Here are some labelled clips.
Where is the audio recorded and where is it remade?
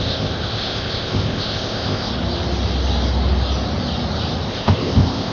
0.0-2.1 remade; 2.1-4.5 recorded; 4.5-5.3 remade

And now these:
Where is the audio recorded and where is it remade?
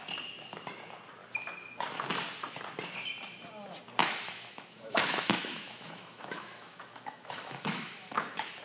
0.0-4.0 recorded; 4.0-8.6 remade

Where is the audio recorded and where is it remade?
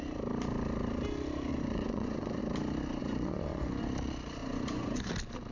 0.0-1.5 recorded; 1.5-2.4 remade; 2.4-3.0 recorded; 3.0-3.8 remade; 3.8-4.4 recorded; 4.4-5.0 remade; 5.0-5.5 recorded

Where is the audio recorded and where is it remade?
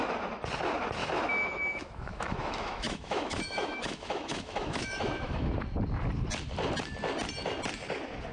0.0-1.0 recorded; 1.0-5.5 remade; 5.5-8.3 recorded